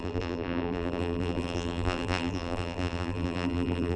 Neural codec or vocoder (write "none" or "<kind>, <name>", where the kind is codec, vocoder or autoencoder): vocoder, BigVGAN v2